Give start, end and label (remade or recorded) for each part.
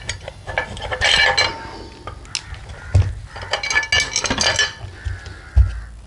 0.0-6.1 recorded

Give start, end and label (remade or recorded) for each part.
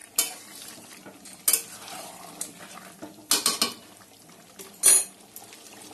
0.0-5.9 recorded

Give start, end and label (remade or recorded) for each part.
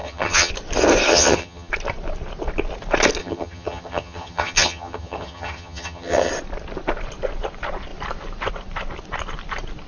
0.0-0.5 remade; 0.5-1.1 recorded; 1.1-1.7 remade; 1.7-3.2 recorded; 3.2-6.3 remade; 6.3-9.9 recorded